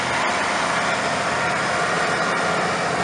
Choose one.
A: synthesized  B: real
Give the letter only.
B